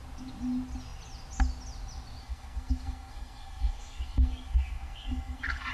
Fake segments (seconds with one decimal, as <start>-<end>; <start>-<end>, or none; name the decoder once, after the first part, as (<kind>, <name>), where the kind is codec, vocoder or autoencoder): 2.2-5.7 (codec, SNAC)